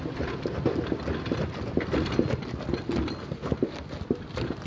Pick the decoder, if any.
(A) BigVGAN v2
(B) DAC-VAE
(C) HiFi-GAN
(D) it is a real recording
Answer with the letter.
D